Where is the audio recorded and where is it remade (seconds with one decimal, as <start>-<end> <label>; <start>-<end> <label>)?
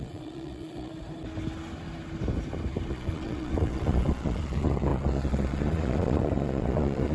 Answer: 0.0-0.9 remade; 0.9-2.9 recorded; 2.9-7.1 remade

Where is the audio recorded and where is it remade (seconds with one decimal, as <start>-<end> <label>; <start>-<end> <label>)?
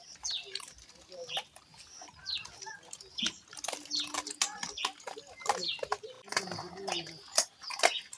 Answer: 0.0-8.2 recorded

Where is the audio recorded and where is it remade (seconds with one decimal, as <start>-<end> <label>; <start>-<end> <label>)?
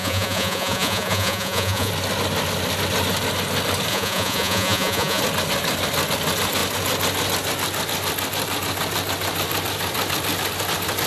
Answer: 0.0-1.9 remade; 1.9-3.9 recorded; 3.9-5.2 remade; 5.2-11.1 recorded